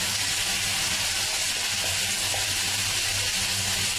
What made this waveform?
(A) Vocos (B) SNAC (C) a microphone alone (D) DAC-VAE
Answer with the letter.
C